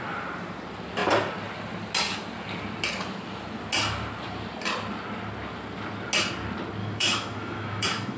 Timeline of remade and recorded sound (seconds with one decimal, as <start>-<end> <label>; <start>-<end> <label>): 0.0-6.8 recorded; 6.8-8.2 remade